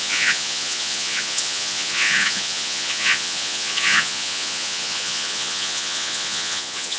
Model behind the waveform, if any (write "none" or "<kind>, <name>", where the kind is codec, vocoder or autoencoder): vocoder, Vocos